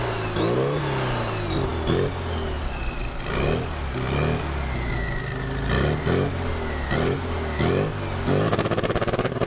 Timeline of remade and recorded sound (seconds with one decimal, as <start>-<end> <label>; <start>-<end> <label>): 0.0-9.5 recorded